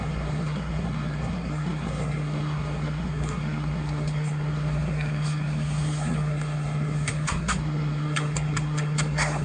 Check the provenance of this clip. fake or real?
fake